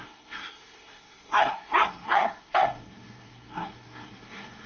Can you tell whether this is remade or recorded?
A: remade